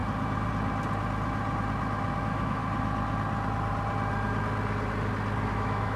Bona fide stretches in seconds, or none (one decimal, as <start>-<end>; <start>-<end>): 0.0-2.2; 2.6-5.5